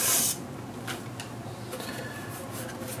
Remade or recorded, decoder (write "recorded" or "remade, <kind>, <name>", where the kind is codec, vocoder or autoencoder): recorded